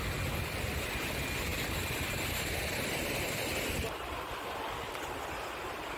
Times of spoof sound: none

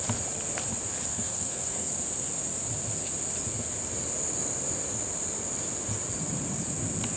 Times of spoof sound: 1.1-1.9 (codec, SNAC)

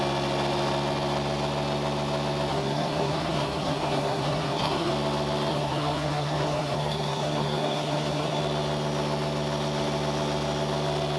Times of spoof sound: 2.5-4.9 (codec, SNAC); 5.5-8.4

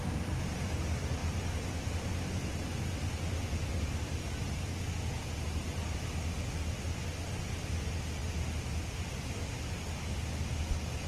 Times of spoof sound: none